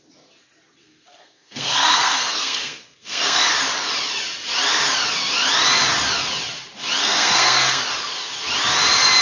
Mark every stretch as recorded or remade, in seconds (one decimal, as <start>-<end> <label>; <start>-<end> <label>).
0.0-0.8 recorded; 0.8-3.4 remade; 3.4-7.0 recorded; 7.0-7.8 remade; 7.8-9.2 recorded